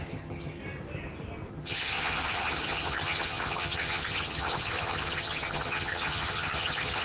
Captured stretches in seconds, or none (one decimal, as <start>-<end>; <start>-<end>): 0.6-1.5